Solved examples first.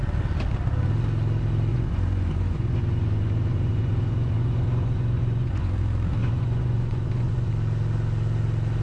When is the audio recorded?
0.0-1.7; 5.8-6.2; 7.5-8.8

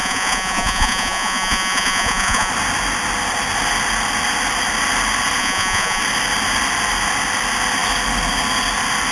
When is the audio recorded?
2.5-5.4; 6.0-9.1

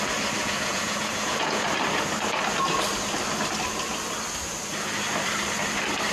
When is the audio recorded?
0.0-0.4; 1.7-6.1

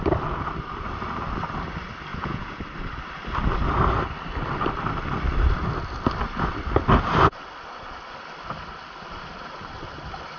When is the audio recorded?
0.0-2.1; 2.6-10.4

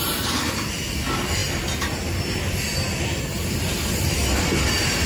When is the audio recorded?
0.0-5.1

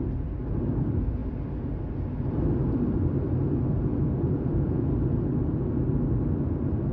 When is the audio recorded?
0.0-3.9; 4.9-6.9

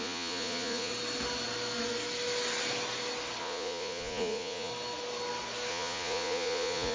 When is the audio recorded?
0.9-3.4; 4.7-5.7